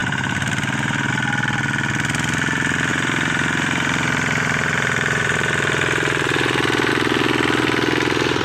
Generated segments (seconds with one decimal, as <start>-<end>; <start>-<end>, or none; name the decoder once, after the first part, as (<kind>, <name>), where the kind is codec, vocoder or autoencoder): 0.0-1.1 (vocoder, BigVGAN v2); 2.9-6.9